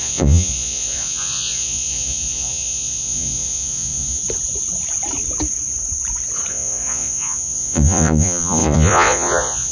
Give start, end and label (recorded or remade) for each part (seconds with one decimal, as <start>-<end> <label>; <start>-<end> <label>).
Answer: 0.0-4.2 remade; 4.2-6.5 recorded; 6.5-9.7 remade